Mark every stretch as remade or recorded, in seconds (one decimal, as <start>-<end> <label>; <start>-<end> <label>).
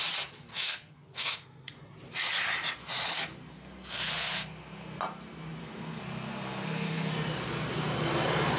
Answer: 0.0-0.5 recorded; 0.5-1.9 remade; 1.9-3.5 recorded; 3.5-5.0 remade; 5.0-5.6 recorded; 5.6-7.1 remade; 7.1-8.6 recorded